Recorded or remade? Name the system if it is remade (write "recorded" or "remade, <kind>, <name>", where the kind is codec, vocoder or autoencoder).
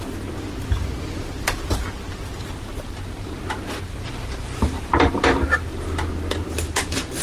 recorded